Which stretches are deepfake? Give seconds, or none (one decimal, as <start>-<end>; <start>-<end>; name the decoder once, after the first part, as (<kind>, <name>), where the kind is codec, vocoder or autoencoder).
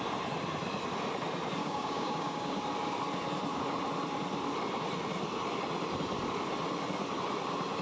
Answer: 1.6-2.6 (codec, DAC)